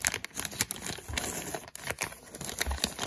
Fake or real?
real